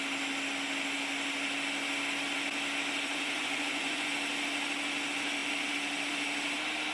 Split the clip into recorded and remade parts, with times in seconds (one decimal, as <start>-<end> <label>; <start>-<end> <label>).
0.0-3.1 recorded; 3.1-4.1 remade; 4.1-6.9 recorded